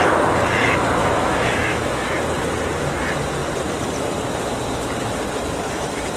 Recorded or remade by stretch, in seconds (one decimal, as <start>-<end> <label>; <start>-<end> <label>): 0.0-1.0 recorded; 1.0-2.1 remade; 2.1-6.2 recorded